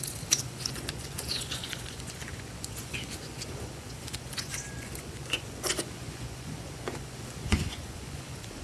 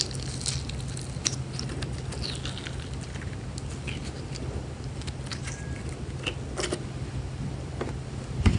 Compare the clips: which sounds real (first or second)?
second